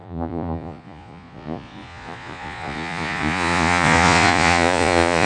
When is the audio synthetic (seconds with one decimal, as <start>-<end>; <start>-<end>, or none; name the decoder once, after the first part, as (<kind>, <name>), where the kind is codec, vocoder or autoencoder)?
0.0-5.3 (vocoder, Vocos)